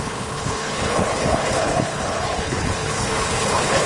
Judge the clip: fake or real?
fake